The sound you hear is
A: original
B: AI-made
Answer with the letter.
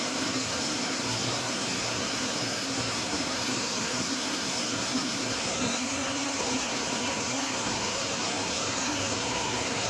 B